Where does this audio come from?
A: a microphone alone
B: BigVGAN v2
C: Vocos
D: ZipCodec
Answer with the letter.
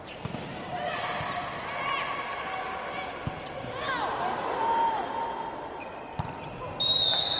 A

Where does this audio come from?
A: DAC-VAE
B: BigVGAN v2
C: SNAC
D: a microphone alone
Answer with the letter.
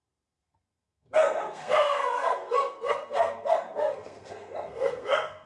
C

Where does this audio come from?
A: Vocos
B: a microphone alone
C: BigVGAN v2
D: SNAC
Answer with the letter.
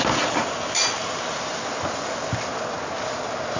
B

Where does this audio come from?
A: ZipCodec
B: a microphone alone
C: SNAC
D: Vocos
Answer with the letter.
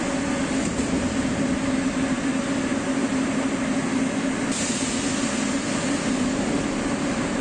B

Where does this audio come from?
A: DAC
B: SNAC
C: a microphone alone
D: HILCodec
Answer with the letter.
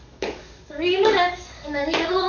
A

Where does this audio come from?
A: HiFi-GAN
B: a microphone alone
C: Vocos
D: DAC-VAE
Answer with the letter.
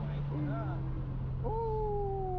B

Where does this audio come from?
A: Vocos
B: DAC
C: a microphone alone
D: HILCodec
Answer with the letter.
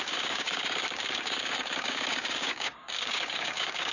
B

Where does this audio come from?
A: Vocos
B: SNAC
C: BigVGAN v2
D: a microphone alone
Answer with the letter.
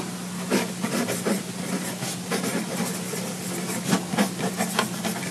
D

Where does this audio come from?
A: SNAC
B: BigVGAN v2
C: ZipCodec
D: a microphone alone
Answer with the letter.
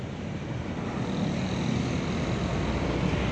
D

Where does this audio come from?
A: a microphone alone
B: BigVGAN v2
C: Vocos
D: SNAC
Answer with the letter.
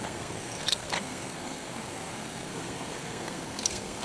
D